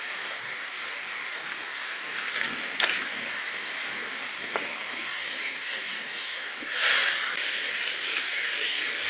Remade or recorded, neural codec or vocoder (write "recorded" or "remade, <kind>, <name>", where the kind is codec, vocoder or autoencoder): remade, codec, DAC